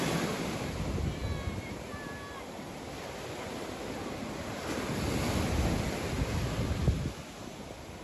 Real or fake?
real